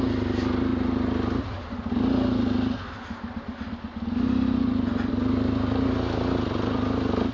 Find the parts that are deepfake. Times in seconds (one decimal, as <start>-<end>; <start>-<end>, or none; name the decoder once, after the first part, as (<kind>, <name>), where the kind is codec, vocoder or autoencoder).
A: none